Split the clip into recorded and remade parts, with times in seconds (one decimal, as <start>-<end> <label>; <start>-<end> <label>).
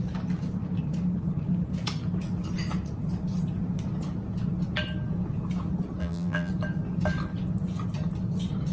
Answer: 0.0-6.0 recorded; 6.0-6.5 remade; 6.5-8.7 recorded